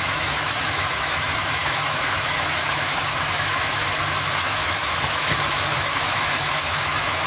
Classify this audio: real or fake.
fake